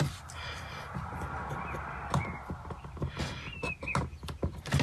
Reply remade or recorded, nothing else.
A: recorded